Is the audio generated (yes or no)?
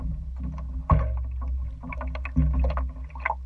no